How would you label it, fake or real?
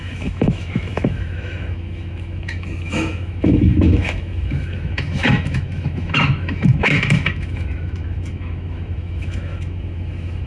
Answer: fake